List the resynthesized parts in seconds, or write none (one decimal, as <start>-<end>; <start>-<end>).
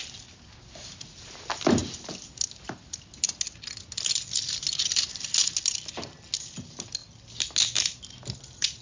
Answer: none